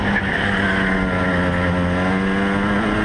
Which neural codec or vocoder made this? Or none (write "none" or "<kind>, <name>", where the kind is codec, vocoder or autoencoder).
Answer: none